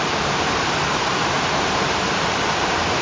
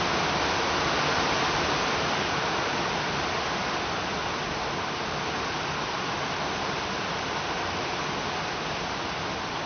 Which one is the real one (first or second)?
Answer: second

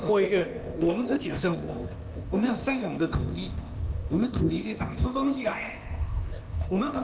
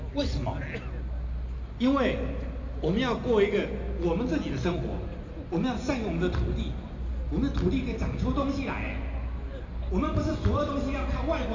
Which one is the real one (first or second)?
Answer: second